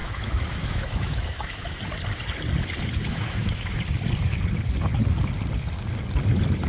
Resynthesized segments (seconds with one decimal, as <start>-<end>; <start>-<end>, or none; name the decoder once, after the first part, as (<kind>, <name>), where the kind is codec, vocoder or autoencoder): 0.0-1.8 (autoencoder, DAC-VAE); 3.0-3.8